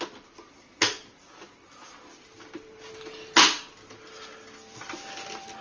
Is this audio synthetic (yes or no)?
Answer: no